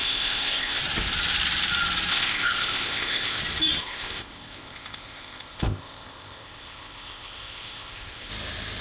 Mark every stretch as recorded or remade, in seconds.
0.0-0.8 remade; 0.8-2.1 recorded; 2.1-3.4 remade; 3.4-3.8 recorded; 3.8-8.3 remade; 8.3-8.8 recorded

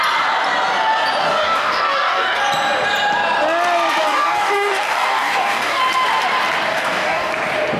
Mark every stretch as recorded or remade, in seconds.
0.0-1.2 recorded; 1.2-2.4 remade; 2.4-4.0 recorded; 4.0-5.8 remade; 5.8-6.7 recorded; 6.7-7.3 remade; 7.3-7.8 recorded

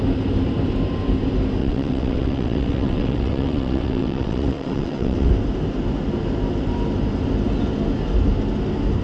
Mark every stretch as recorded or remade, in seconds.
0.0-1.6 recorded; 1.6-5.3 remade; 5.3-9.0 recorded